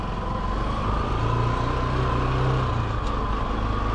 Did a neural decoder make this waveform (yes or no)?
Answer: no